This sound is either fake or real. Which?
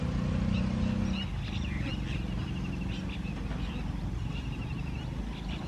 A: real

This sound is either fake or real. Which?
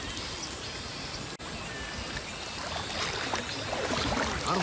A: real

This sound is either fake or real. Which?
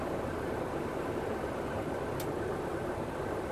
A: real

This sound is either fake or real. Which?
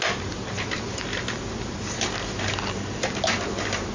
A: real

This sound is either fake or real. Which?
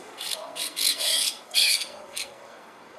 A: fake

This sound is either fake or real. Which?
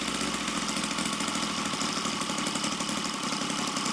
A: real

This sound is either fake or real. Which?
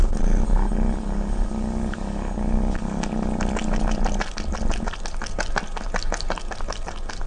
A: real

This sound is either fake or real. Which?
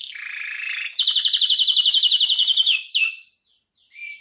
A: real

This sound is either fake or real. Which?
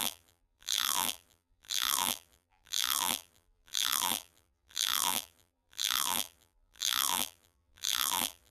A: fake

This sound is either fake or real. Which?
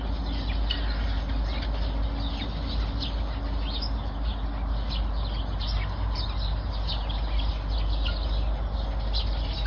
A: real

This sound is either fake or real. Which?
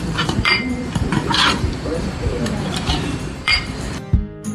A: fake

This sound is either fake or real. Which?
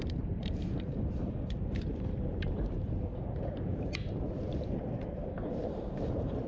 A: fake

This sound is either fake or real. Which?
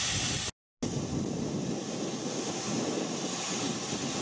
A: real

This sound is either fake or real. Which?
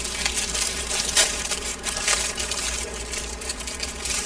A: fake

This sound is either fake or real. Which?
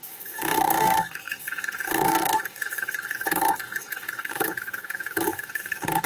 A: fake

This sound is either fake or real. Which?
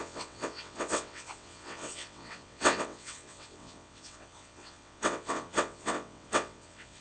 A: fake